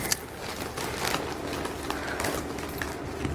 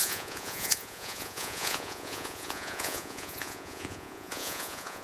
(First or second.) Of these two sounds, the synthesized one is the second